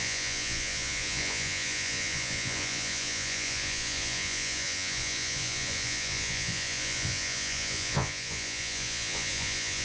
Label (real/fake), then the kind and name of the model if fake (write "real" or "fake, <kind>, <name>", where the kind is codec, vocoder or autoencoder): fake, vocoder, Vocos